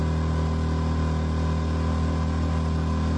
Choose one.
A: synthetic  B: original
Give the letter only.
B